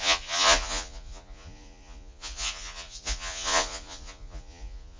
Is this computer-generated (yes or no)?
yes